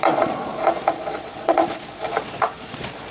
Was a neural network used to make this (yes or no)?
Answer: yes